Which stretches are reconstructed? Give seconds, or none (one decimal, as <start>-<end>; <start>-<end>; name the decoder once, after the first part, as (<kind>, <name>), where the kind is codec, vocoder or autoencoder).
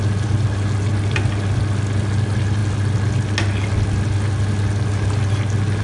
none